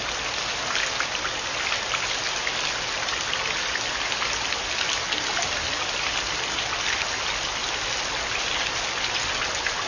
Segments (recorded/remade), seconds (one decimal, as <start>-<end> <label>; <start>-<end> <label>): 0.0-9.9 recorded